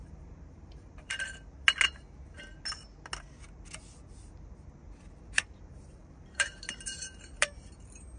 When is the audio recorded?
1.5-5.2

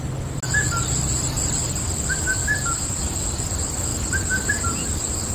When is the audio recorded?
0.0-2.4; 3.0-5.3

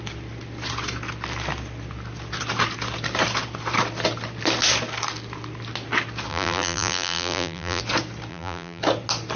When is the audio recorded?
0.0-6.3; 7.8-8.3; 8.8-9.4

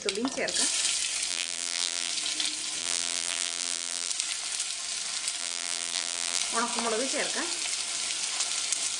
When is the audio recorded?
0.0-1.3; 2.1-2.8; 4.1-5.4; 6.4-9.0